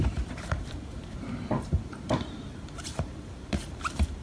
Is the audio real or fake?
fake